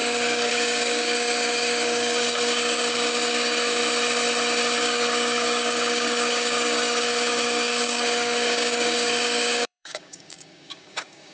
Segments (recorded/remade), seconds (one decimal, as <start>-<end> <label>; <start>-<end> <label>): 0.0-3.8 remade; 3.8-4.8 recorded; 4.8-11.3 remade